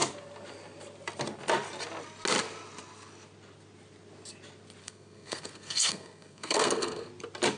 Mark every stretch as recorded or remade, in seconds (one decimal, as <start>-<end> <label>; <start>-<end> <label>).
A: 0.0-4.8 recorded; 4.8-7.1 remade; 7.1-7.6 recorded